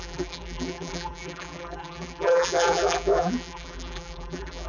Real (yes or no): no